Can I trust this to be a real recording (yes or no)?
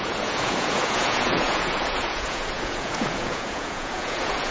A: no